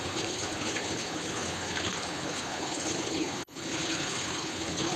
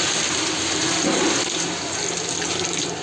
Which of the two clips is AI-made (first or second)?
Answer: first